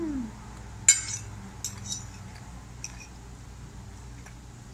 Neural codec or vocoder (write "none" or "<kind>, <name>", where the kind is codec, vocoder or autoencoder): none